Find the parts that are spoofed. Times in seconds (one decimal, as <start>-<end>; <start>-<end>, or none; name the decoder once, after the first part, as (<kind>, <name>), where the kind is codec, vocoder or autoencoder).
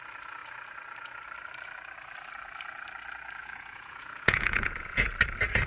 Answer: 3.4-5.1 (vocoder, Vocos)